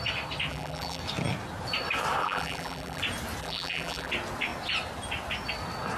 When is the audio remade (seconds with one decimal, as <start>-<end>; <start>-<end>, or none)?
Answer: 0.5-1.0; 2.2-3.0; 3.4-4.1